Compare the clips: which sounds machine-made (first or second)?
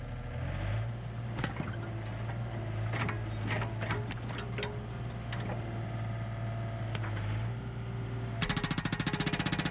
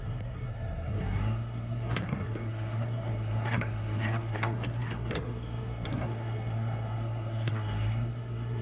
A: second